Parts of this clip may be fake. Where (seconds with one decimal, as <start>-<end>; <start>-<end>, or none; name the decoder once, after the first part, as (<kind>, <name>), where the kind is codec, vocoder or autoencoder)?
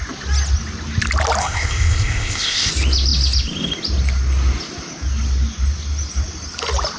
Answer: 1.4-2.7 (codec, ZipCodec)